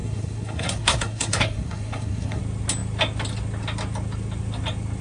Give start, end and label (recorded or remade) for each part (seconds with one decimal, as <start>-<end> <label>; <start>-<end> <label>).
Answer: 0.0-2.4 remade; 2.4-5.0 recorded